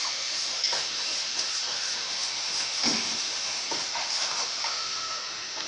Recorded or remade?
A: remade